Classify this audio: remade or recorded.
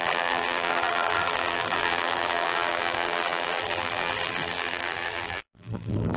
remade